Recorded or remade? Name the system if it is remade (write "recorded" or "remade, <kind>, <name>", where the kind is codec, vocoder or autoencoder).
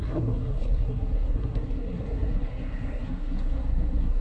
remade, codec, SNAC